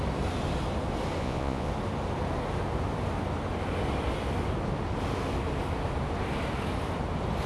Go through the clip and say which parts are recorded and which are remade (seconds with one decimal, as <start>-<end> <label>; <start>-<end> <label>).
0.0-1.2 recorded; 1.2-1.7 remade; 1.7-7.5 recorded